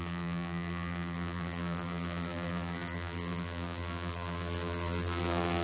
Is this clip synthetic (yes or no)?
yes